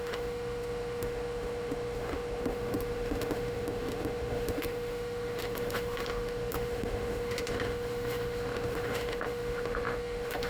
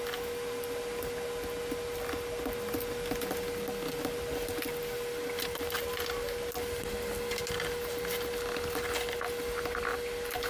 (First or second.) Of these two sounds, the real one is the second